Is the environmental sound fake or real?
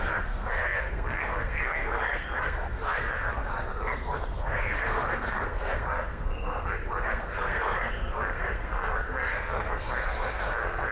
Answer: fake